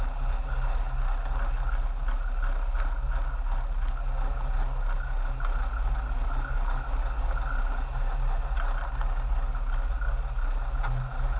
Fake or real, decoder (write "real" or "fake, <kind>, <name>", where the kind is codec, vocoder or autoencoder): real